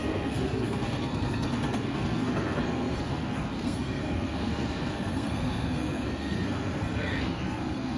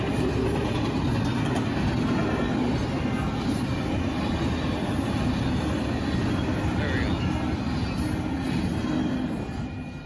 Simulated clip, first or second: first